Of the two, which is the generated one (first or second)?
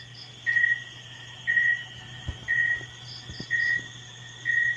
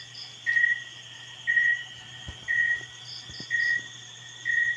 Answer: second